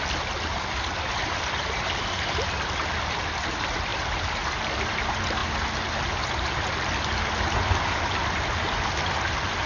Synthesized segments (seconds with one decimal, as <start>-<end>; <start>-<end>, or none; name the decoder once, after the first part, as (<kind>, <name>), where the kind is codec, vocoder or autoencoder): none